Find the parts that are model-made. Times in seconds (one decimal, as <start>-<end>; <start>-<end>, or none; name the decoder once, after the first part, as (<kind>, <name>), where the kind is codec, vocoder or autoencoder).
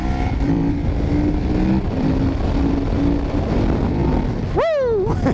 0.0-3.2 (vocoder, BigVGAN v2)